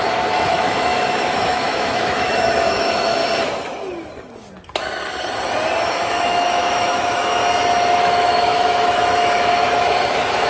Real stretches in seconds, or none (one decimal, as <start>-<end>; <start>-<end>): 3.2-5.8; 7.4-7.9